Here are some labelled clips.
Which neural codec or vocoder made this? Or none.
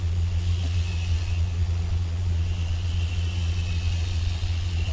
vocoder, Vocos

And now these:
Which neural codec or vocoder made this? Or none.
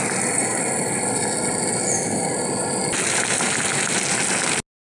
none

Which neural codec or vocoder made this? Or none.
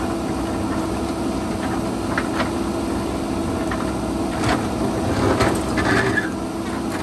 none